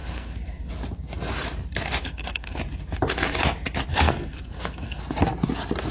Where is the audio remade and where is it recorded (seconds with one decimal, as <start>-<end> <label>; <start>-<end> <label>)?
0.0-0.7 remade; 0.7-2.0 recorded; 2.0-2.6 remade; 2.6-3.9 recorded; 3.9-5.0 remade; 5.0-5.9 recorded

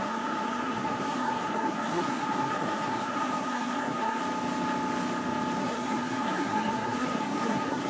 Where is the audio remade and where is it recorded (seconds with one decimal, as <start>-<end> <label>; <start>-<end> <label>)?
0.0-4.2 remade; 4.2-5.6 recorded; 5.6-7.9 remade

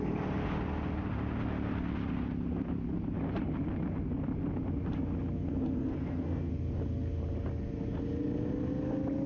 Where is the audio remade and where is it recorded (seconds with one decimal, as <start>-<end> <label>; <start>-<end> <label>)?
0.0-5.8 recorded; 5.8-6.5 remade; 6.5-9.3 recorded

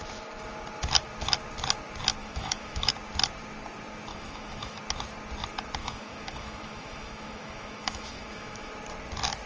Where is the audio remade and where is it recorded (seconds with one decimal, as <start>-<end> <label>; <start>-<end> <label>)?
0.0-2.2 recorded; 2.2-2.9 remade; 2.9-4.1 recorded; 4.1-4.8 remade; 4.8-5.8 recorded; 5.8-8.7 remade; 8.7-9.5 recorded

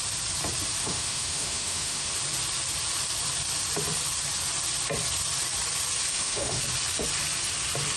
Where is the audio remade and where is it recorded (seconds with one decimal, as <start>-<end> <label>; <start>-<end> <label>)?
0.0-0.8 recorded; 0.8-2.1 remade; 2.1-6.1 recorded; 6.1-6.6 remade; 6.6-8.0 recorded

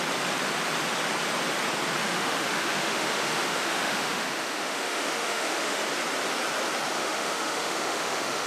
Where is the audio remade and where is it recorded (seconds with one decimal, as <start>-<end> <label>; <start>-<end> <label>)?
0.0-2.0 recorded; 2.0-5.8 remade; 5.8-7.0 recorded; 7.0-8.5 remade

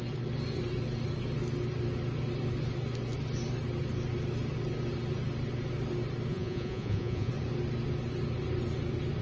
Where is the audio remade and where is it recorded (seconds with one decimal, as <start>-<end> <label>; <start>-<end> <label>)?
0.0-6.3 recorded; 6.3-7.3 remade; 7.3-9.2 recorded

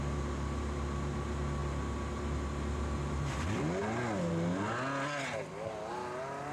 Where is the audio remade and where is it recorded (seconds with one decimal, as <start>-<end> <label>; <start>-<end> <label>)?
0.0-6.5 recorded